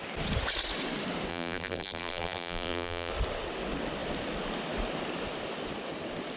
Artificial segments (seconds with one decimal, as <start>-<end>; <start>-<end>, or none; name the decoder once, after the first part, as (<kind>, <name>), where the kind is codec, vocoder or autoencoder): 1.3-3.1 (vocoder, BigVGAN v2)